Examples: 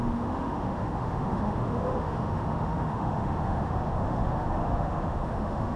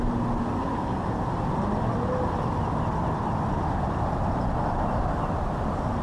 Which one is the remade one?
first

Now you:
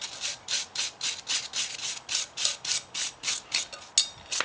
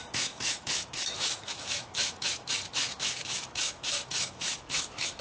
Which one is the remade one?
second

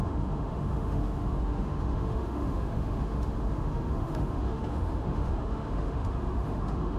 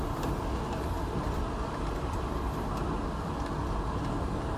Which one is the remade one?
first